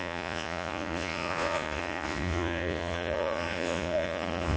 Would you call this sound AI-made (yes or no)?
yes